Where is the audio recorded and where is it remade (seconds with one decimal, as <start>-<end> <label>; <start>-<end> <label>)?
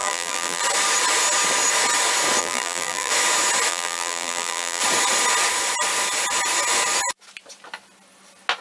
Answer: 0.0-0.6 remade; 0.6-2.4 recorded; 2.4-3.1 remade; 3.1-3.7 recorded; 3.7-4.8 remade; 4.8-8.6 recorded